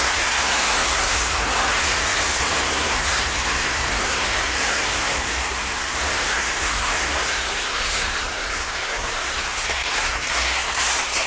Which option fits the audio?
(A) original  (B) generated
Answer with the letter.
B